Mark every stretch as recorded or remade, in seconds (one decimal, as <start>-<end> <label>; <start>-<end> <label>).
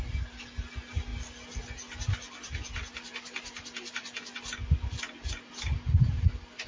0.0-6.7 recorded